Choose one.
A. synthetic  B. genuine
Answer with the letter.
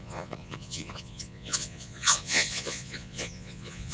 A